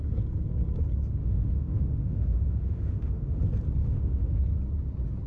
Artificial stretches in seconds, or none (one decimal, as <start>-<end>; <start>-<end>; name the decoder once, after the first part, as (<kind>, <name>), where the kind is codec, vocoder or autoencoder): 1.2-3.4 (autoencoder, DAC-VAE); 3.8-4.4